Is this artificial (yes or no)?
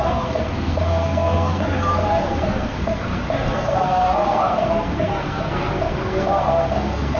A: yes